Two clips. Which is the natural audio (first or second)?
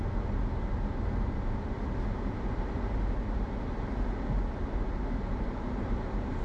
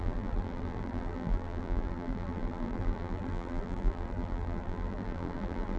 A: first